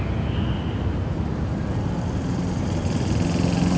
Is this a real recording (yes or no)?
yes